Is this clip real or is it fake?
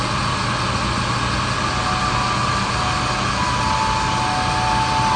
real